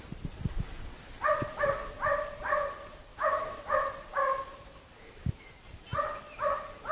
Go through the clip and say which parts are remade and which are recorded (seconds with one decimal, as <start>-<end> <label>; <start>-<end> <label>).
0.0-3.1 recorded; 3.1-3.6 remade; 3.6-4.2 recorded; 4.2-5.5 remade; 5.5-6.9 recorded

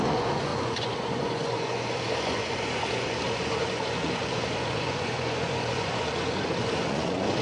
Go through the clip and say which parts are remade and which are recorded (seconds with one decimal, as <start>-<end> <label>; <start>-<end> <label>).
0.0-7.4 remade